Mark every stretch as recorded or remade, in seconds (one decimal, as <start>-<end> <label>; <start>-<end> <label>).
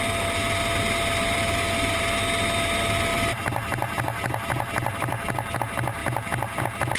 0.0-1.2 recorded; 1.2-2.0 remade; 2.0-3.1 recorded; 3.1-5.6 remade; 5.6-7.0 recorded